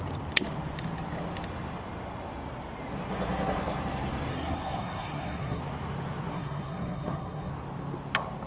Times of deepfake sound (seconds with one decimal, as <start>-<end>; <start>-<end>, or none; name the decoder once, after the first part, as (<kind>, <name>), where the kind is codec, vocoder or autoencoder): 4.3-5.6 (codec, SNAC); 6.3-7.5